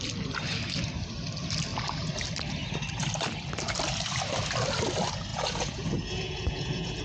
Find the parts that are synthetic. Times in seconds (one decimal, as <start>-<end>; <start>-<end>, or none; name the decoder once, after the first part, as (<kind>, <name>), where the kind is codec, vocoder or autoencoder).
5.3-7.0 (vocoder, Vocos)